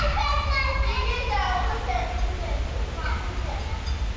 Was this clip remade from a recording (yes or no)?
no